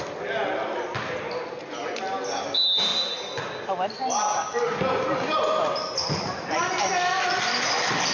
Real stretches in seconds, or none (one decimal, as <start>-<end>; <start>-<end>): 0.0-8.1